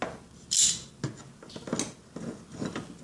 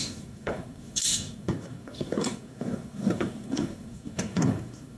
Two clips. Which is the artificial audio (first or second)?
second